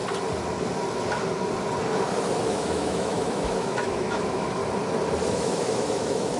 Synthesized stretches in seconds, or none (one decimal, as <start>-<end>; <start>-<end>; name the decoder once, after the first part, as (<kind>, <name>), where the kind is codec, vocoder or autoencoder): 2.4-4.6 (autoencoder, DAC-VAE); 5.3-6.4